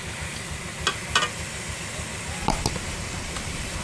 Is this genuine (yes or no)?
yes